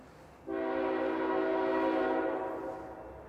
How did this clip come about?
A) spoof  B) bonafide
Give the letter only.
B